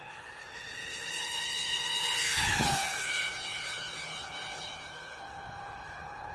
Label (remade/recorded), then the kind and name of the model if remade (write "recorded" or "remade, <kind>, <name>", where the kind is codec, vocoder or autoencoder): remade, codec, HILCodec